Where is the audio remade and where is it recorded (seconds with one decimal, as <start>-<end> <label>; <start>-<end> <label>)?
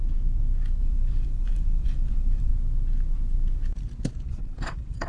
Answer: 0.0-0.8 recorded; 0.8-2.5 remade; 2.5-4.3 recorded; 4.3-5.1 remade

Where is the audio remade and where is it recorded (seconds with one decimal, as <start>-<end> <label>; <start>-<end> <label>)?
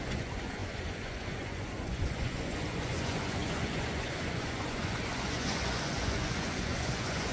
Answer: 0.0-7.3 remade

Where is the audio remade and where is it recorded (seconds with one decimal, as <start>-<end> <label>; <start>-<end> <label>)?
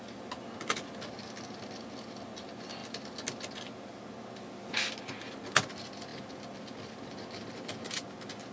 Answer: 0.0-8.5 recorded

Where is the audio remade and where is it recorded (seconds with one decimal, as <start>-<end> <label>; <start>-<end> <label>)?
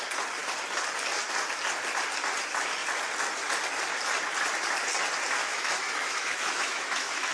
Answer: 0.0-5.4 recorded; 5.4-7.3 remade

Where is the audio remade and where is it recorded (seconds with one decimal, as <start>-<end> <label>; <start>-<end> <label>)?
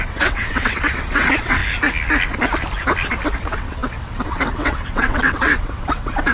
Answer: 0.0-1.6 remade; 1.6-3.4 recorded; 3.4-6.3 remade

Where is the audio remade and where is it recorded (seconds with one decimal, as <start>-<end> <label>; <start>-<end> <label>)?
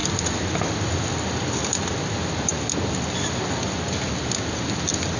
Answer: 0.0-5.2 recorded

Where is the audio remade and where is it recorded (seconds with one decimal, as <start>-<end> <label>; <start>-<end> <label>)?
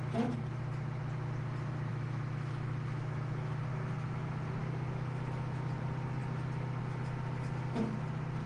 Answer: 0.0-1.9 recorded; 1.9-3.7 remade; 3.7-4.6 recorded; 4.6-5.8 remade; 5.8-8.5 recorded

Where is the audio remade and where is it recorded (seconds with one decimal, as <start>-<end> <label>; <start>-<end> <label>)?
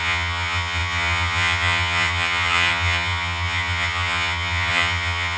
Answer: 0.0-5.4 remade